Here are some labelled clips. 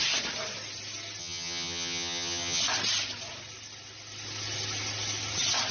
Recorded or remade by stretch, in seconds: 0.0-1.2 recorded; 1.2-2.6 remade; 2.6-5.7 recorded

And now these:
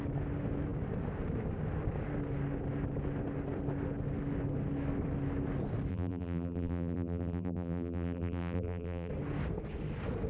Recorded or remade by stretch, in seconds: 0.0-5.9 recorded; 5.9-9.1 remade; 9.1-10.3 recorded

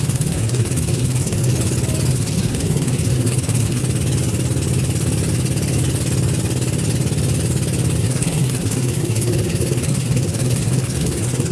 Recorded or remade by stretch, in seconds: 0.0-1.5 remade; 1.5-2.1 recorded; 2.1-3.8 remade; 3.8-8.0 recorded; 8.0-11.5 remade

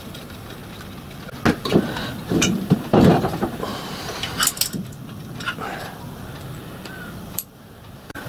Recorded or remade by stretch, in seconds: 0.0-0.6 remade; 0.6-2.1 recorded; 2.1-3.7 remade; 3.7-7.3 recorded; 7.3-8.3 remade

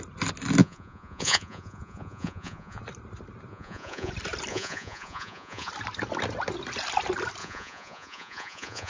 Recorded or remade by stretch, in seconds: 0.0-0.6 recorded; 0.6-2.8 remade; 2.8-3.5 recorded; 3.5-4.1 remade; 4.1-4.5 recorded; 4.5-5.7 remade; 5.7-7.4 recorded; 7.4-8.9 remade

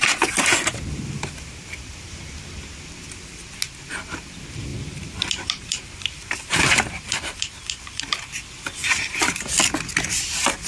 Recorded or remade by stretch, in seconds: 0.0-4.7 recorded; 4.7-8.0 remade; 8.0-8.8 recorded; 8.8-9.6 remade; 9.6-10.7 recorded

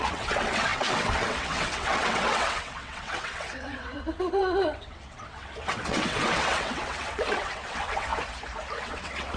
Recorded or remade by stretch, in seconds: 0.0-8.1 remade; 8.1-8.8 recorded; 8.8-9.4 remade